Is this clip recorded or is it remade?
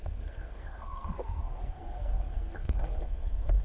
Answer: remade